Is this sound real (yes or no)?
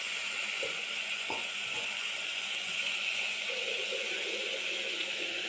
no